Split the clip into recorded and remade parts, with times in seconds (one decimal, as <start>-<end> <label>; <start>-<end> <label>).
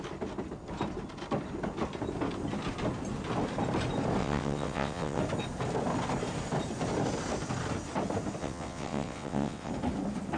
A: 0.0-4.2 recorded; 4.2-5.2 remade; 5.2-8.4 recorded; 8.4-9.7 remade; 9.7-10.4 recorded